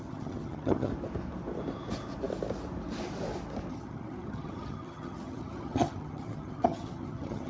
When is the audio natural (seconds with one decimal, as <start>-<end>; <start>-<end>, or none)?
0.9-3.7